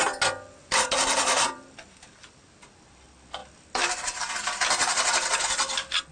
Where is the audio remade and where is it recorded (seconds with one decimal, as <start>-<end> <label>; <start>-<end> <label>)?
0.0-0.6 recorded; 0.6-2.3 remade; 2.3-6.1 recorded